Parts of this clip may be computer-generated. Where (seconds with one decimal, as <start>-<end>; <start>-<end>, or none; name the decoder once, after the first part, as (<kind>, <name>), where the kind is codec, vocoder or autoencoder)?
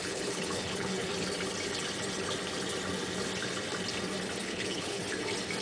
0.0-1.1 (codec, HILCodec); 4.4-5.0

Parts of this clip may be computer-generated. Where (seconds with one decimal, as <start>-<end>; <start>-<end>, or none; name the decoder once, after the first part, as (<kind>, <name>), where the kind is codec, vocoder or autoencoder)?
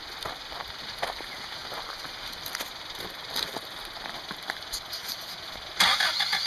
none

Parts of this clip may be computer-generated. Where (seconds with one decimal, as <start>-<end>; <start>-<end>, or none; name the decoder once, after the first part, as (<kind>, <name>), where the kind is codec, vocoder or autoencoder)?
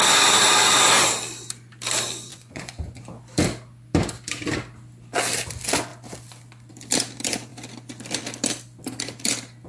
2.3-2.9 (vocoder, Vocos)